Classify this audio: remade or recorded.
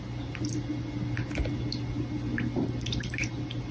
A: recorded